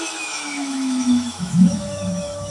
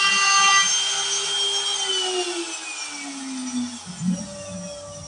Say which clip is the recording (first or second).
second